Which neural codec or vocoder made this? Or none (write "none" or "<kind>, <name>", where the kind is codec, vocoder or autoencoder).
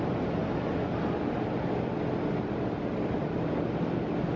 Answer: none